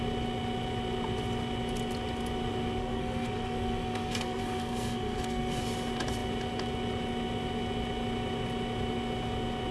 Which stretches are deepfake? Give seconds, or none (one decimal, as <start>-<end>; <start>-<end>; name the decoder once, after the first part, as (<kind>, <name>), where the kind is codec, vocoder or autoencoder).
2.8-5.6 (codec, SNAC)